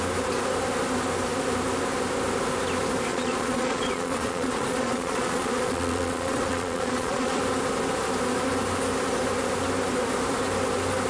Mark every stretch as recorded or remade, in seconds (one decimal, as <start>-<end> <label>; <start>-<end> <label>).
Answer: 0.0-3.1 recorded; 3.1-7.4 remade; 7.4-11.1 recorded